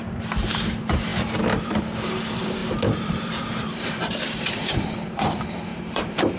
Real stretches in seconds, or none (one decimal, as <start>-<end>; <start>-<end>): 1.1-1.6